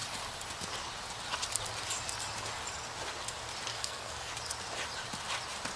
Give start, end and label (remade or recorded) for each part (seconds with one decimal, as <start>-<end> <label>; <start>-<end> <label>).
0.0-3.7 recorded; 3.7-4.3 remade; 4.3-5.8 recorded

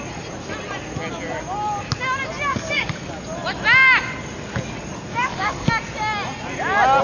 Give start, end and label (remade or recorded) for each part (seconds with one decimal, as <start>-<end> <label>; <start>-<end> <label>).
0.0-2.5 recorded; 2.5-3.1 remade; 3.1-5.1 recorded; 5.1-5.7 remade; 5.7-7.0 recorded

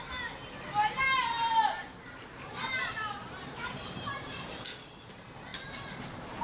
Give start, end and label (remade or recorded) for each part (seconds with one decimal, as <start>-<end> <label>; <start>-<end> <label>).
0.0-1.2 recorded; 1.2-5.0 remade; 5.0-5.5 recorded; 5.5-6.4 remade

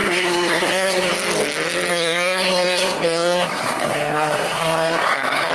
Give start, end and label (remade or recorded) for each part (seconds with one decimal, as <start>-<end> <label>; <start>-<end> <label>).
0.0-1.1 remade; 1.1-1.9 recorded; 1.9-5.5 remade